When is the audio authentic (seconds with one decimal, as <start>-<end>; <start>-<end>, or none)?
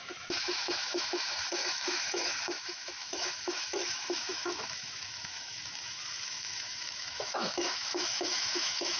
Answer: none